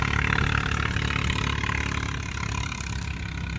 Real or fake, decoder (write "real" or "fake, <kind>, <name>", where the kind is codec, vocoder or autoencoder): real